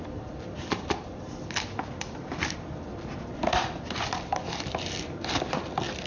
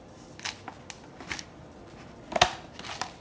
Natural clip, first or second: second